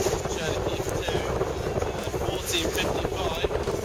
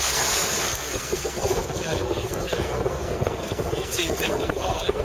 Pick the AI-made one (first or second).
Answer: second